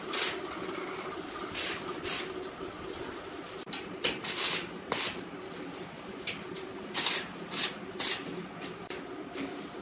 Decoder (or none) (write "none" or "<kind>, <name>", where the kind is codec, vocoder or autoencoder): none